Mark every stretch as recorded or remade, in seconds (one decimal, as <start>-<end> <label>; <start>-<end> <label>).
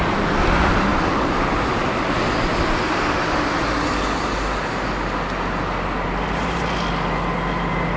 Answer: 0.0-8.0 recorded